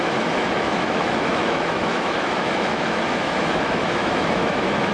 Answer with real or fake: fake